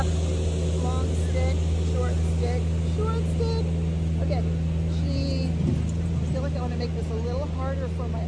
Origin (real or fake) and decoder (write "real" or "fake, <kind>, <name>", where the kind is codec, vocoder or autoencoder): real